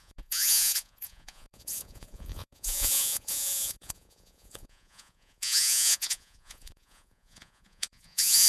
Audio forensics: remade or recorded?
remade